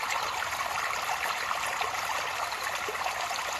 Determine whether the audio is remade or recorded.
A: recorded